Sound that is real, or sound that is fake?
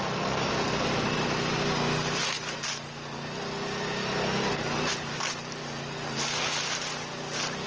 real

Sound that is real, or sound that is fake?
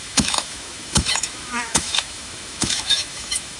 fake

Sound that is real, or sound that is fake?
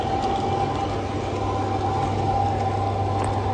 real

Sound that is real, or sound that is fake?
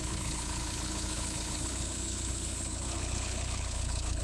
fake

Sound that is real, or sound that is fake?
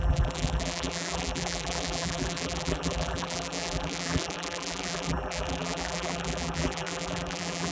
fake